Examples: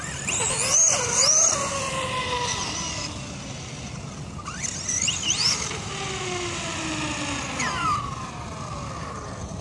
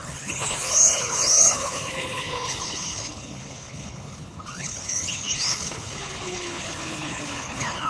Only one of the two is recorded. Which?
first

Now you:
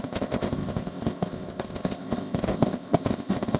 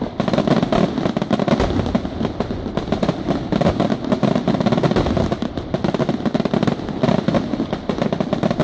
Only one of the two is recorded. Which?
second